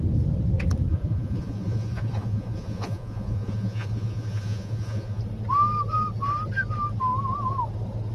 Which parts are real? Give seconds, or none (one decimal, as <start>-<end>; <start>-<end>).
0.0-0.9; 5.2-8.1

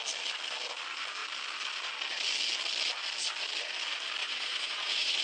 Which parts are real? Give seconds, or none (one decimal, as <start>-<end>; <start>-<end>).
0.0-4.2

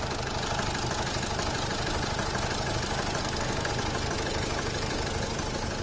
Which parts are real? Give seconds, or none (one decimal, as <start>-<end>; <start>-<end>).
0.0-3.2; 3.7-5.8

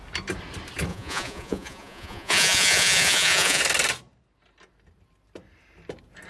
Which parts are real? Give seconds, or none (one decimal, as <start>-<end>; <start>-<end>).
0.0-0.9; 3.6-6.3

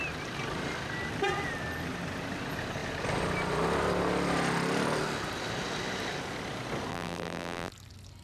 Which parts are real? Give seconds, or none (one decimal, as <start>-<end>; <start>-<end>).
0.0-6.9; 7.7-8.2

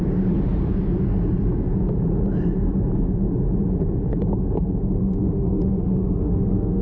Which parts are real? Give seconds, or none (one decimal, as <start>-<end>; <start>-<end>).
0.0-4.8

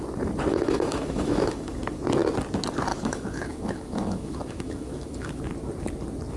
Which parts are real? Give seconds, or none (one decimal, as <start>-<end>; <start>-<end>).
0.0-0.5; 1.8-2.9; 5.4-6.4